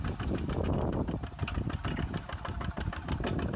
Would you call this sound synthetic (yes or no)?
no